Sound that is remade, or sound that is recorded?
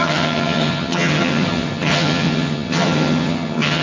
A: remade